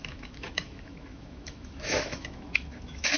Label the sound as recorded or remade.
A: remade